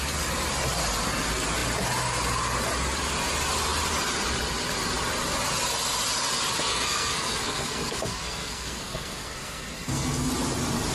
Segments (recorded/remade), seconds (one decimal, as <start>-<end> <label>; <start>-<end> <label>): 0.0-6.7 recorded; 6.7-10.3 remade; 10.3-10.9 recorded